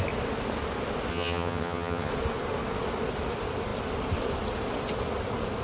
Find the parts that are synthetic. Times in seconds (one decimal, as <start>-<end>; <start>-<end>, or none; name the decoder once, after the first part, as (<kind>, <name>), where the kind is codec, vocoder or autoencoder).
1.1-2.1 (vocoder, HiFi-GAN)